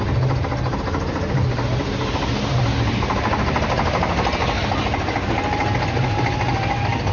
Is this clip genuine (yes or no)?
yes